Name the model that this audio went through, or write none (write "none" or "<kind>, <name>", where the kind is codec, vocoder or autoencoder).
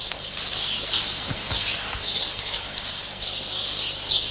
codec, SNAC